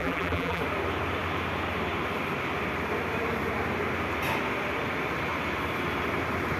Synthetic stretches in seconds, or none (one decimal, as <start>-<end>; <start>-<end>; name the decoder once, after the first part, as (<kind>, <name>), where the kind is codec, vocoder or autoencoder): 0.0-0.6 (vocoder, BigVGAN v2)